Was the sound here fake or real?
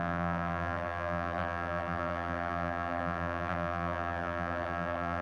fake